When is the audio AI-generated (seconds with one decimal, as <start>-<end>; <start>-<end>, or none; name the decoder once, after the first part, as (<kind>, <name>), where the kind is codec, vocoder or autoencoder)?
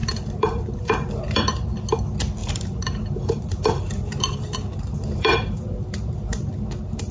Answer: 0.0-1.7 (vocoder, BigVGAN v2); 2.4-7.1